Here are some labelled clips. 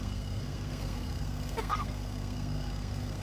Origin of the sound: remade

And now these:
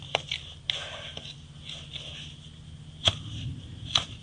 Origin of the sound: recorded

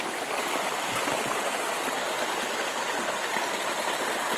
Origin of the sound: recorded